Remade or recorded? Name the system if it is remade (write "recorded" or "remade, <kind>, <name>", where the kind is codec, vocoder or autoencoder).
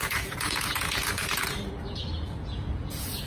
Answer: remade, vocoder, Vocos